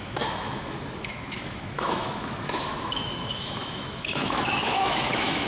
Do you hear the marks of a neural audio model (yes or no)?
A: yes